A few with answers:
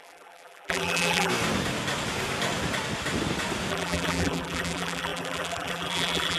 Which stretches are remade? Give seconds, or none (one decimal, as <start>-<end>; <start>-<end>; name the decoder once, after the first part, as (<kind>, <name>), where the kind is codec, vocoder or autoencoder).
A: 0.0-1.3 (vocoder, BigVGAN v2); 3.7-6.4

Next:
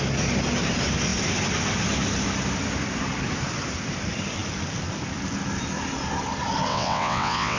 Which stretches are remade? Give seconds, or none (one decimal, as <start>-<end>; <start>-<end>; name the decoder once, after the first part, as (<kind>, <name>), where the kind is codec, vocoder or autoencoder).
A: 6.7-7.6 (vocoder, WaveNeXt)

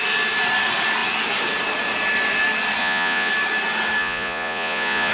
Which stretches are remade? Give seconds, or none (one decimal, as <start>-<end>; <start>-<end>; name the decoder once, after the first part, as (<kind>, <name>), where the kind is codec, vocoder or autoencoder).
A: 2.8-3.3 (vocoder, Vocos); 4.0-5.1

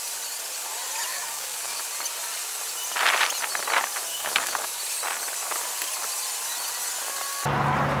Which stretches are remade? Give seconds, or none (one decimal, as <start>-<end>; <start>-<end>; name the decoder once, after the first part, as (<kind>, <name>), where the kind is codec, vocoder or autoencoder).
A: 1.1-1.8 (codec, DAC); 4.1-4.8

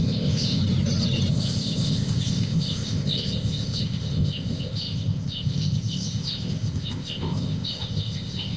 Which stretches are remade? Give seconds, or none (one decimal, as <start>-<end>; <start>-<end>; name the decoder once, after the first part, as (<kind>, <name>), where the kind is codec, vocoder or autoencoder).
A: 0.0-0.6 (codec, ZipCodec); 1.3-8.6